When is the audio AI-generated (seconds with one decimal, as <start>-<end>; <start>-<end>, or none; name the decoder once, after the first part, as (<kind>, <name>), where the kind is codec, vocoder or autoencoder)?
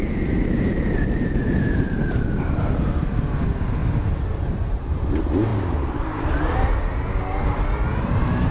0.0-3.8 (vocoder, BigVGAN v2); 4.7-5.5; 8.0-8.5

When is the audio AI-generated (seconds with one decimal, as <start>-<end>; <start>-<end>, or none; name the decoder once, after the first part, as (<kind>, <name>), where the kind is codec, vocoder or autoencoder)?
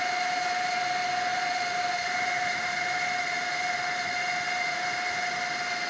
1.3-3.0 (vocoder, BigVGAN v2)